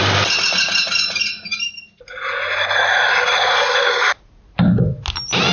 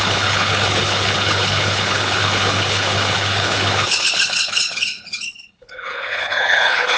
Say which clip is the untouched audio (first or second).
first